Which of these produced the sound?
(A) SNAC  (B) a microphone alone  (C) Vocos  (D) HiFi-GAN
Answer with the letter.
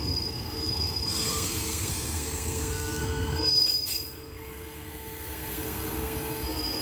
A